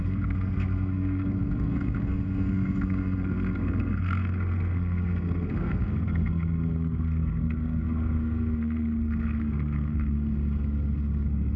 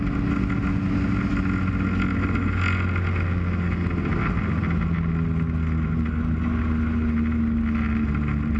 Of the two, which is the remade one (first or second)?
first